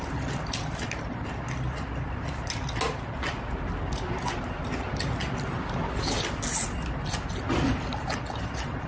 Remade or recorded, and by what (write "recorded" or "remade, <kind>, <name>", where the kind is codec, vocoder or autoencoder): recorded